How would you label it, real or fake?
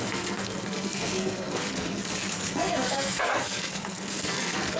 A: fake